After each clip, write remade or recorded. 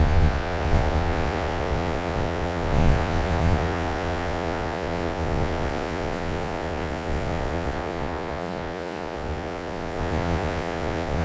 remade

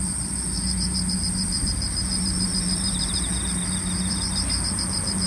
remade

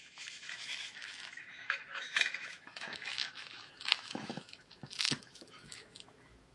remade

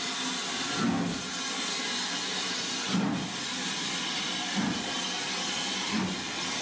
recorded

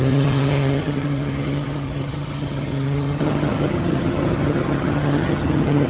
remade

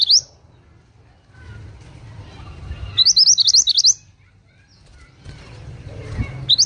recorded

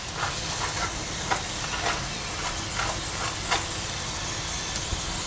recorded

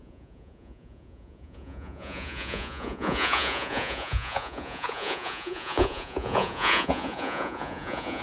remade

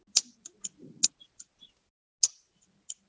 recorded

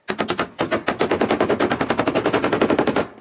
recorded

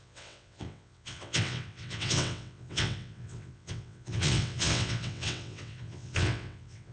remade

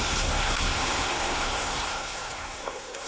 remade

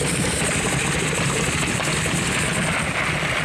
recorded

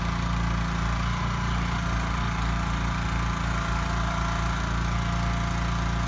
recorded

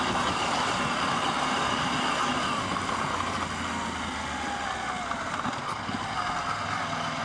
recorded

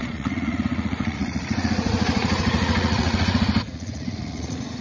remade